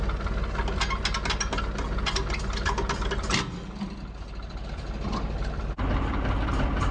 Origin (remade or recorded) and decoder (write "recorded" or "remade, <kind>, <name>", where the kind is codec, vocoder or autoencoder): recorded